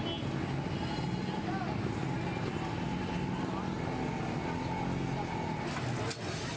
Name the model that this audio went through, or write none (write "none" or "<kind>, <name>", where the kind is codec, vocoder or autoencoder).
none